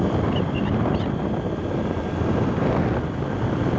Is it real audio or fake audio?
real